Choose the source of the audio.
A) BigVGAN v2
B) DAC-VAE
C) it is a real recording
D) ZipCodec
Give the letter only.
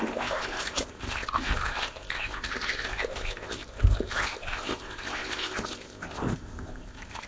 D